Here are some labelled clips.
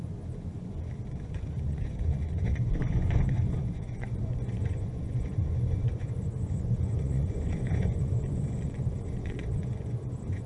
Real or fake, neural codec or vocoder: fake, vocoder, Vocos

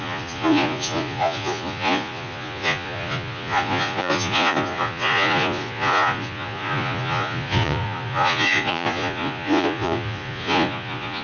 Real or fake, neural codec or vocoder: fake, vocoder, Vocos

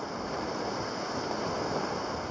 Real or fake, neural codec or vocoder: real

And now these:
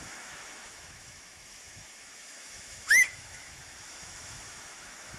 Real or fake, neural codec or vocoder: fake, autoencoder, DAC-VAE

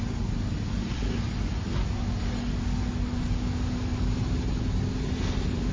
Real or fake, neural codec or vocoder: real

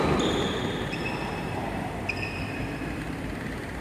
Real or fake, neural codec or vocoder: fake, vocoder, BigVGAN v2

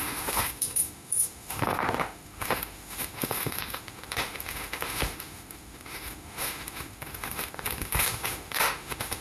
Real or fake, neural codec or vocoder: fake, autoencoder, DAC-VAE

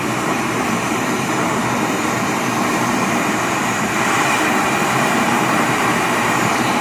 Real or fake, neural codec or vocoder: fake, vocoder, BigVGAN v2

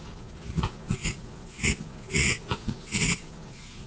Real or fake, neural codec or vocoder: fake, vocoder, Vocos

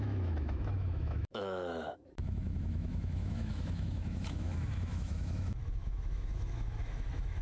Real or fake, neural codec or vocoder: fake, autoencoder, DAC-VAE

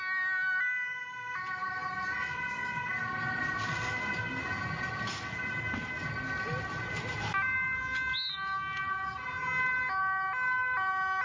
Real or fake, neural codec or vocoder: real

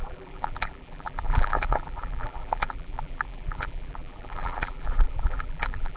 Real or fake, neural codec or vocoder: fake, vocoder, BigVGAN v2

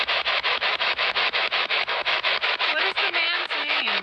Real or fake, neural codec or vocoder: fake, autoencoder, DAC-VAE